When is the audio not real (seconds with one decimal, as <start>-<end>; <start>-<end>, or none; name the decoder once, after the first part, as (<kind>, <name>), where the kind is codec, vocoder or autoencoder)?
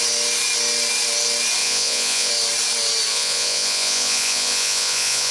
1.6-2.3 (vocoder, Vocos); 3.1-5.3